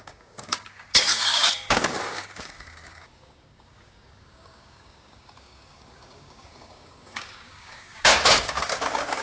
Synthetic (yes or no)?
yes